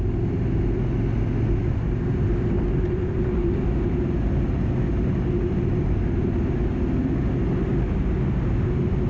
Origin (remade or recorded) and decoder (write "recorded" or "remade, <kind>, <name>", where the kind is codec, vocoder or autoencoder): recorded